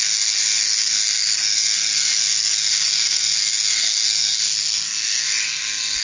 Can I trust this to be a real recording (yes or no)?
no